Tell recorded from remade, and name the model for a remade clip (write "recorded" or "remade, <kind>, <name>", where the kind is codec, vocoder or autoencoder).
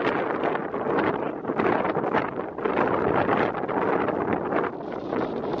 recorded